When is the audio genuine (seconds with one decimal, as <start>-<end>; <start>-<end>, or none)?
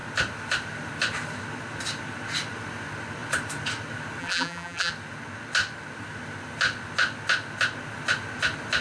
0.0-4.2; 4.9-8.8